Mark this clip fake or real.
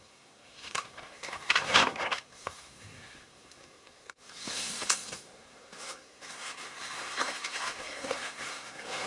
fake